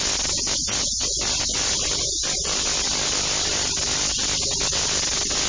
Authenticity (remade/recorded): recorded